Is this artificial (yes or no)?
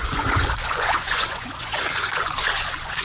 yes